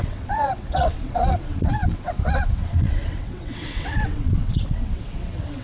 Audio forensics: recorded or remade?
remade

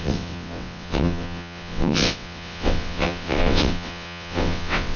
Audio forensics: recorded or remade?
remade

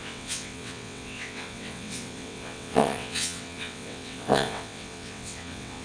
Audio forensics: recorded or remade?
remade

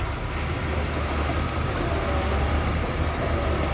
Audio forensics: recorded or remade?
recorded